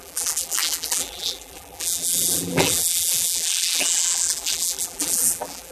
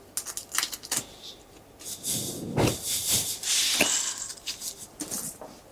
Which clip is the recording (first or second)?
second